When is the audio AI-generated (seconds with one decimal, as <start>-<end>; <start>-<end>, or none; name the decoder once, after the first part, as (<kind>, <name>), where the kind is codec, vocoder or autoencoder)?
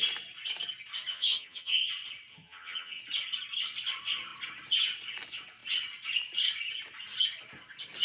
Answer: 1.1-1.9 (vocoder, HiFi-GAN); 2.3-3.0